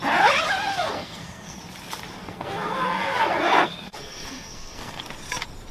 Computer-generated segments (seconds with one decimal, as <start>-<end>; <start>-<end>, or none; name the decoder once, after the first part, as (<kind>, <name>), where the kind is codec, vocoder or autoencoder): 0.7-1.6 (codec, SNAC); 2.2-5.0